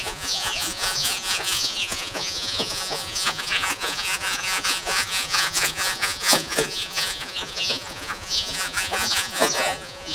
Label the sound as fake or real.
fake